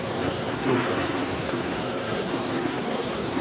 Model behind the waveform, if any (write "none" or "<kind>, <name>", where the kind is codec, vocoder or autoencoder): codec, SNAC